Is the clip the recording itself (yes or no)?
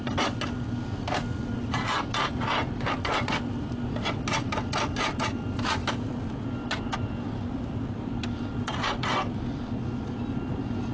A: yes